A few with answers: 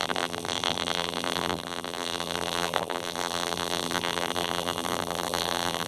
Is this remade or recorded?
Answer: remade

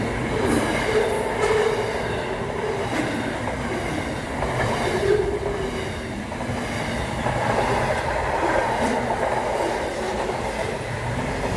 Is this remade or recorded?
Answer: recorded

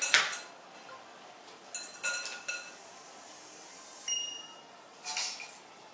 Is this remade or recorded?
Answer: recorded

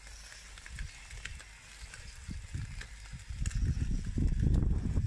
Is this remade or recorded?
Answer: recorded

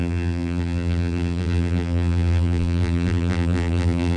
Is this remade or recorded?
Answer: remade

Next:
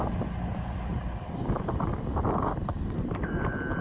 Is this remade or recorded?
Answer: recorded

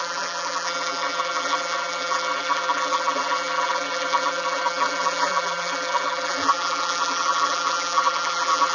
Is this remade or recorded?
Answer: remade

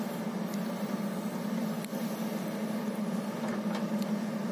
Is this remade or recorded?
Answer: recorded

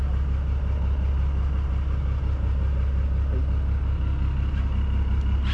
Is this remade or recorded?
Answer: recorded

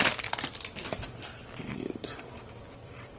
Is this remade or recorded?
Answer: remade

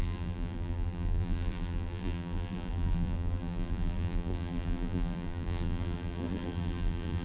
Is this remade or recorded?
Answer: remade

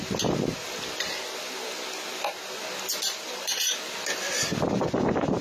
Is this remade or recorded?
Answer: recorded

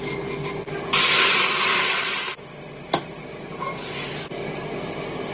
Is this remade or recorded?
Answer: recorded